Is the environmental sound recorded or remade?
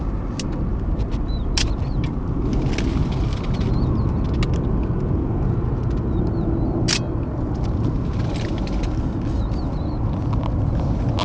recorded